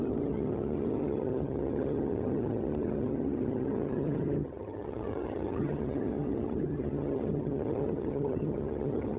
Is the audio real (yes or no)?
no